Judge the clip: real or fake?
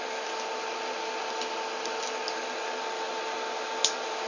real